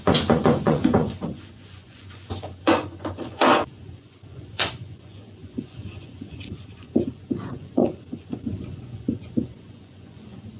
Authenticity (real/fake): fake